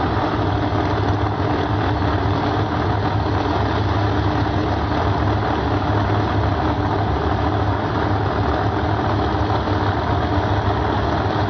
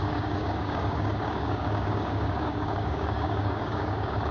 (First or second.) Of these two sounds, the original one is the first